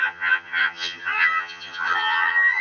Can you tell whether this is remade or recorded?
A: remade